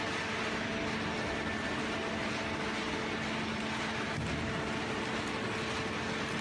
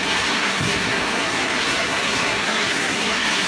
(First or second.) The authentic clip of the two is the first